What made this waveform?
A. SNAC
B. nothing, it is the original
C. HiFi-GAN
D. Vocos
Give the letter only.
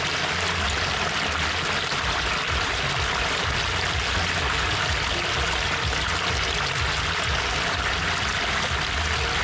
B